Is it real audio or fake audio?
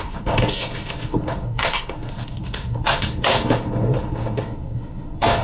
fake